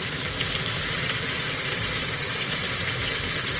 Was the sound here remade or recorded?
recorded